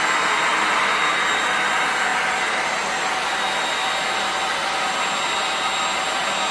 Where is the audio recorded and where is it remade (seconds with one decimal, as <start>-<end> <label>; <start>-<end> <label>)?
0.0-2.1 recorded; 2.1-3.4 remade; 3.4-6.5 recorded